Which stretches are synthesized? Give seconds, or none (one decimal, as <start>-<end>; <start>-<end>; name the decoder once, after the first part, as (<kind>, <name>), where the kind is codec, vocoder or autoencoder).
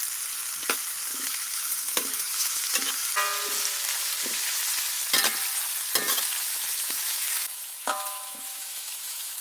1.1-2.9 (autoencoder, DAC-VAE); 6.5-9.4